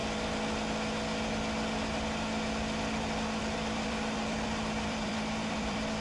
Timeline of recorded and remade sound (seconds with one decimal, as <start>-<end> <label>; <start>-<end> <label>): 0.0-3.4 recorded; 3.4-6.0 remade